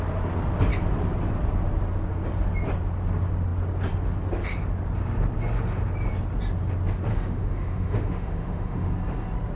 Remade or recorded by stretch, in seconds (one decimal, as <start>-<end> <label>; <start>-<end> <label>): 0.0-7.1 recorded; 7.1-8.9 remade; 8.9-9.6 recorded